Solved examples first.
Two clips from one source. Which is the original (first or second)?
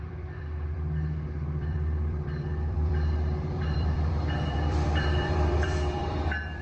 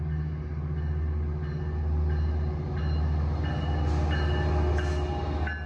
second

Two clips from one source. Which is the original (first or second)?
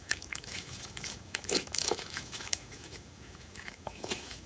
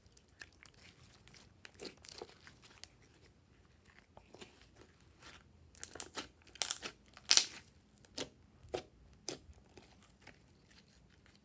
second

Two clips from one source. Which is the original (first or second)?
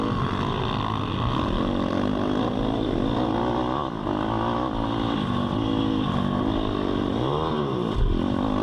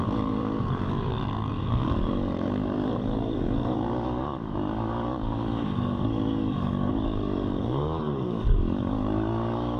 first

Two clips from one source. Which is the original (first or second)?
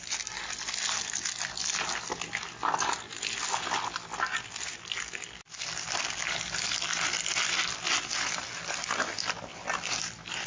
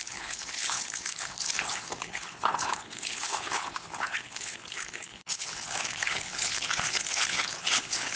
first